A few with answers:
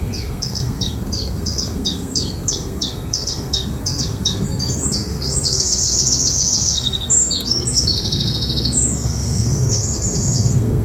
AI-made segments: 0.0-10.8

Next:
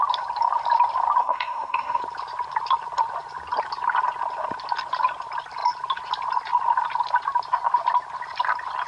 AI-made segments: 1.2-2.0

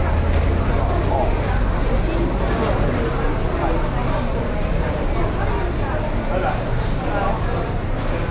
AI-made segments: none

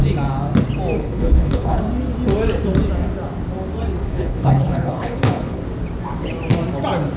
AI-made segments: 1.0-1.8; 4.0-5.6

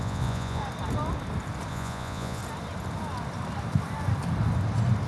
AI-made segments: 0.0-0.6; 1.7-2.4

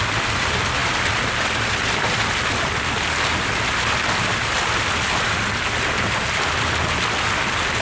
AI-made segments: none